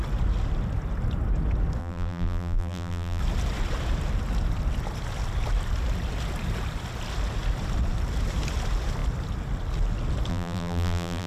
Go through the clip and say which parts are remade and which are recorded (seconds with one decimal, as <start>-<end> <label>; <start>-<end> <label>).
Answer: 0.0-1.8 recorded; 1.8-3.2 remade; 3.2-10.3 recorded; 10.3-11.3 remade